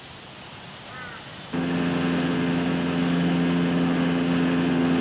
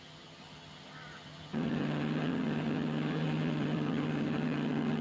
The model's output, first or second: second